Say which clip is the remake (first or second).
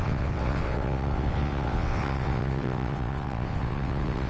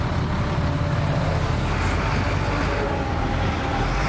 first